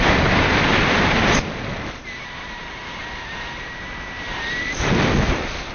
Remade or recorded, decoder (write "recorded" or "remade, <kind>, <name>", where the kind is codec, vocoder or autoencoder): recorded